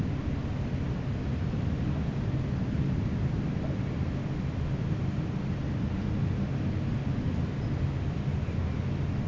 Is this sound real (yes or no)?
yes